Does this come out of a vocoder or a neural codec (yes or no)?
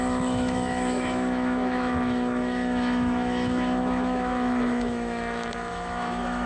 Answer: yes